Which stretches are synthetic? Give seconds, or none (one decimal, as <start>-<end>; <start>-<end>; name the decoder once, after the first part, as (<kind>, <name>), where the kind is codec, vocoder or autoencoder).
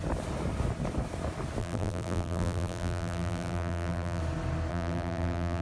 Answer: 1.6-4.2 (vocoder, BigVGAN v2); 4.7-5.6